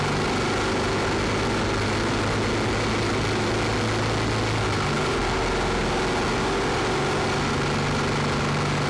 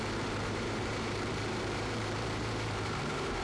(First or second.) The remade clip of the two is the second